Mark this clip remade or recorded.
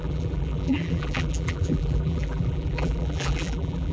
remade